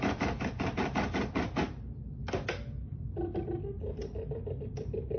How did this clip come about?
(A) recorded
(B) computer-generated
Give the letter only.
B